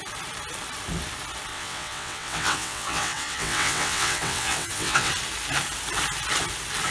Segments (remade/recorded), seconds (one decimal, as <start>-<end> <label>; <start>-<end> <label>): 0.0-1.5 recorded; 1.5-5.1 remade; 5.1-6.9 recorded